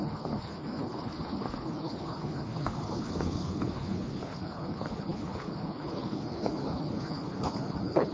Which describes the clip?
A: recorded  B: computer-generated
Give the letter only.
B